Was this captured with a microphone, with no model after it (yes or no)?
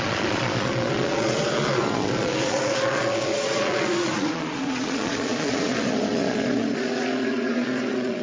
no